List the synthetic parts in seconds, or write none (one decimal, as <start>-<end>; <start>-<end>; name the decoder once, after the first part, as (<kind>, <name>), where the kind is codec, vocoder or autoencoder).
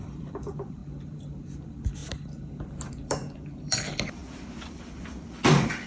0.0-0.8 (vocoder, BigVGAN v2); 1.6-2.0; 2.8-4.2; 4.7-5.9